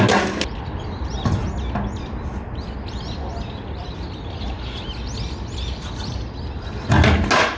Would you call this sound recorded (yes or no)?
yes